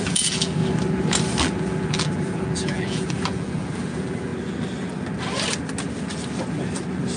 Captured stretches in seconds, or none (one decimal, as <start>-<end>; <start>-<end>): 0.6-1.4; 4.3-7.2